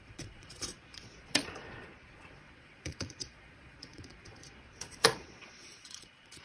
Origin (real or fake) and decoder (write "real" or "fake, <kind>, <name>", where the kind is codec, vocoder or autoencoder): fake, vocoder, Vocos